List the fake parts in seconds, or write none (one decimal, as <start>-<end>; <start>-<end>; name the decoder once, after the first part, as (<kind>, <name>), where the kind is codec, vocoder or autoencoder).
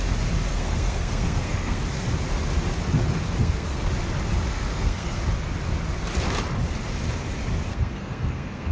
0.5-1.8 (codec, SNAC); 3.4-3.9; 4.5-5.2; 7.7-8.7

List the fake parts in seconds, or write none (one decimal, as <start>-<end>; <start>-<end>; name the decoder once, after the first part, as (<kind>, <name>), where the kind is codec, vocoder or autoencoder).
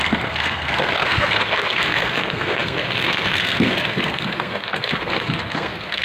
0.0-6.0 (codec, SNAC)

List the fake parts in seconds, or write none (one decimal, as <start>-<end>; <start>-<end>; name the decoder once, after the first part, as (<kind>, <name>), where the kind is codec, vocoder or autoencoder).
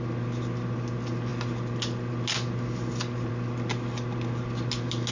none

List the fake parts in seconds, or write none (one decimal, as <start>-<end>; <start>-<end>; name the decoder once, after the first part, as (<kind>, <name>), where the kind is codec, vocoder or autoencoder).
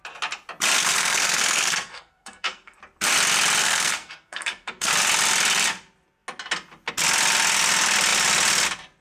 0.8-2.8 (codec, SNAC); 3.6-4.9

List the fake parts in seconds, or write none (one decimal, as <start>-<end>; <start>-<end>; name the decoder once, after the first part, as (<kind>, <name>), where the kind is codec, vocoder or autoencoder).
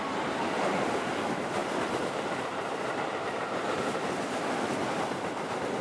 none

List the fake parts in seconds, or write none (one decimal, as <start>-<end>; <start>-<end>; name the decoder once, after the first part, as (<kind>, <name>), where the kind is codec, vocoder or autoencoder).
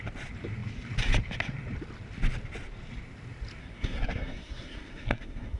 3.6-5.6 (codec, SNAC)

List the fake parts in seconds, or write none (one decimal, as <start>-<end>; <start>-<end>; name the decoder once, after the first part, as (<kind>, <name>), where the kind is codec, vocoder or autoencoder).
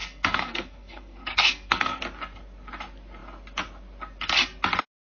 0.0-2.0 (codec, SNAC)